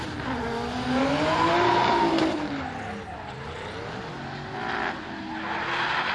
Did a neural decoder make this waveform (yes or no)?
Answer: no